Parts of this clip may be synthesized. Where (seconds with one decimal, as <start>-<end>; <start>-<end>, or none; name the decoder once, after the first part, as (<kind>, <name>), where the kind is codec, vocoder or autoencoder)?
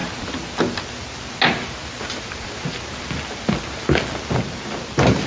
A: none